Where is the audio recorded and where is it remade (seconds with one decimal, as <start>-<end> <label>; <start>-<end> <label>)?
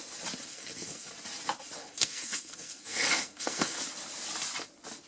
0.0-0.5 recorded; 0.5-1.1 remade; 1.1-1.8 recorded; 1.8-3.8 remade; 3.8-5.1 recorded